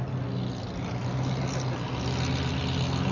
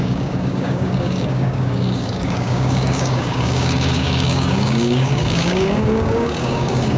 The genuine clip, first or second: first